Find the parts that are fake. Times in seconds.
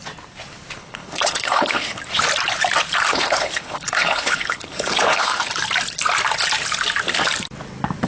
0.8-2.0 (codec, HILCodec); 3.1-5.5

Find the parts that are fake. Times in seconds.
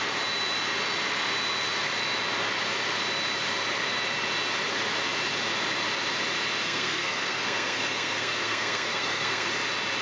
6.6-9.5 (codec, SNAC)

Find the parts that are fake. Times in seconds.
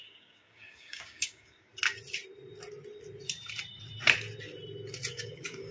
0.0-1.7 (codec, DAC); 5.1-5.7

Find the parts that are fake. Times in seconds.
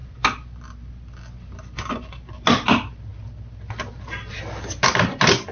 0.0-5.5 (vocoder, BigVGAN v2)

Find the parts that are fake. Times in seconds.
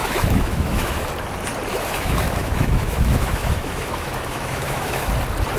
0.0-1.1 (autoencoder, DAC-VAE); 1.7-5.1